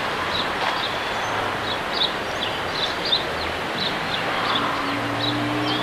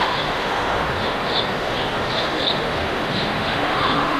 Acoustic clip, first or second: first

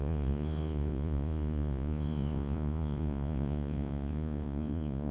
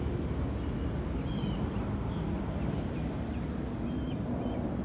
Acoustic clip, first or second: second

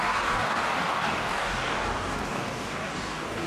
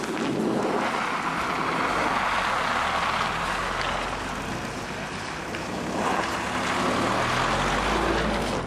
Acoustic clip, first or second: second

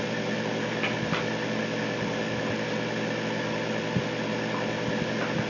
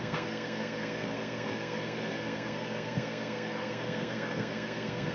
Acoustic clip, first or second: first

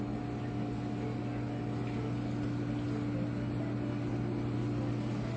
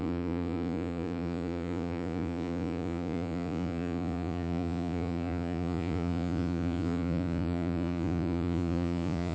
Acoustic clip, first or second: first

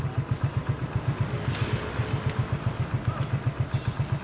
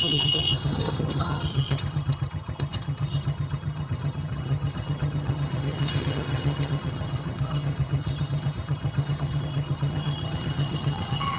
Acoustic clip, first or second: first